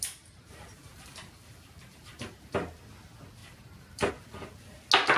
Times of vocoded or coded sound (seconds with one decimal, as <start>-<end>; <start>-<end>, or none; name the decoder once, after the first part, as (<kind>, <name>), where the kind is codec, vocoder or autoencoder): 0.9-2.5 (vocoder, BigVGAN v2); 3.4-4.1